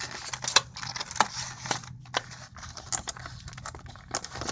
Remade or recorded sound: recorded